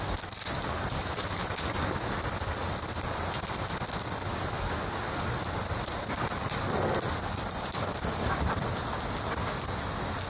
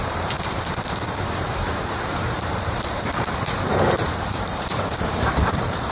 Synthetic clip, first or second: second